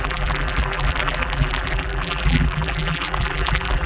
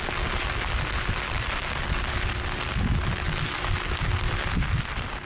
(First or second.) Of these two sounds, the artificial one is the first